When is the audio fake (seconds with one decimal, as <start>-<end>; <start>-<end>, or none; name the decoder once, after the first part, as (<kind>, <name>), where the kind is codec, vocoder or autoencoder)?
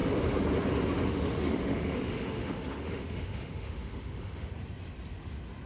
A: 1.1-4.5 (autoencoder, DAC-VAE)